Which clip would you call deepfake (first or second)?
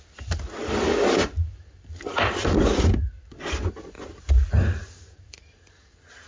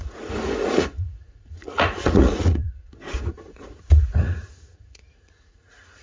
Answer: second